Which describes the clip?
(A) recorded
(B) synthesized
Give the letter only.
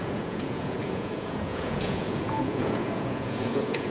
B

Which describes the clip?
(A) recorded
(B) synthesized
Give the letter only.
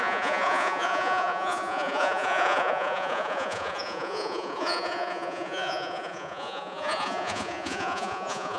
B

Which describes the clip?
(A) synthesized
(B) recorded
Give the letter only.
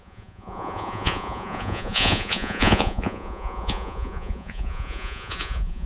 A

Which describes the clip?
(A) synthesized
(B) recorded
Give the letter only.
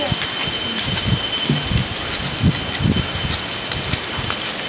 B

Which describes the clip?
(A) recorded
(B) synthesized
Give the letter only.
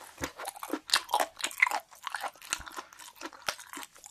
A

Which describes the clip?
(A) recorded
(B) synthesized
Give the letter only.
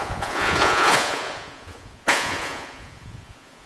B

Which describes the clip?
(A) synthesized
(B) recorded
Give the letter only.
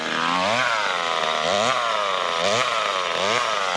B